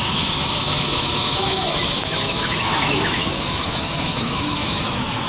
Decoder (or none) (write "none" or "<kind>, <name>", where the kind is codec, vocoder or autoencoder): autoencoder, DAC-VAE